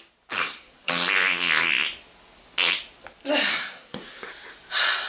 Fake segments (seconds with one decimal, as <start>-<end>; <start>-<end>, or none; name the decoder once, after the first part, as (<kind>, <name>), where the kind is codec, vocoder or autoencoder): 0.4-0.9 (codec, SNAC); 3.5-4.3